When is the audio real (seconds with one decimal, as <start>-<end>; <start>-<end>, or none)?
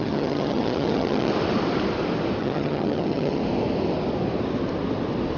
1.3-2.4; 3.4-5.4